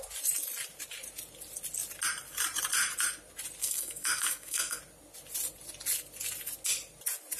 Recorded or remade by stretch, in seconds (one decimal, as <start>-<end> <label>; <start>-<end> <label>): 0.0-3.6 recorded; 3.6-4.8 remade; 4.8-7.4 recorded